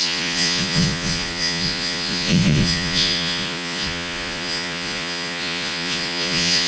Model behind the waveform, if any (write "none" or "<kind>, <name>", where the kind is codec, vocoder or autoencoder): vocoder, Vocos